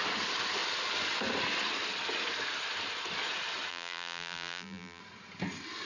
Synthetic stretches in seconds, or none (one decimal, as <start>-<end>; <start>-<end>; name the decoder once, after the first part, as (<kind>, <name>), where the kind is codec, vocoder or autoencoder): 3.7-5.0 (vocoder, BigVGAN v2)